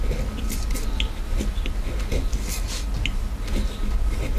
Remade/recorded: recorded